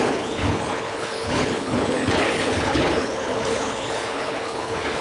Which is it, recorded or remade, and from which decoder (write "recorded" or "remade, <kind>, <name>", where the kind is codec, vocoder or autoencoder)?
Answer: remade, codec, HILCodec